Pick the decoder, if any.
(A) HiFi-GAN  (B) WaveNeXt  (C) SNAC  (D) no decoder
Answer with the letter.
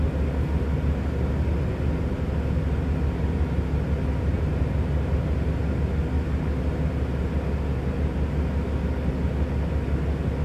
D